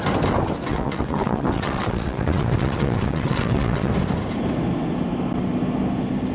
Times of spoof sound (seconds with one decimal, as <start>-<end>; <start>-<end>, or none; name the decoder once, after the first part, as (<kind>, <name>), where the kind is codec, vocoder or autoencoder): 0.7-3.9 (vocoder, WaveNeXt)